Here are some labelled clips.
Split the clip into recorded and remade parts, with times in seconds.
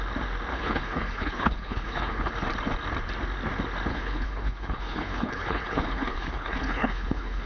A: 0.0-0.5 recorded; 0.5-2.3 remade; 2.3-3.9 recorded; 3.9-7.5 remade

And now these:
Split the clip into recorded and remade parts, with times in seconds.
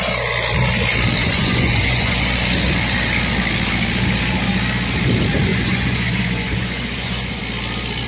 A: 0.0-1.2 recorded; 1.2-2.3 remade; 2.3-5.5 recorded; 5.5-7.4 remade; 7.4-8.1 recorded